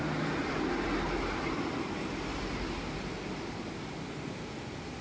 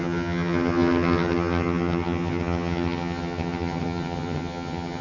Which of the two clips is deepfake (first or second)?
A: second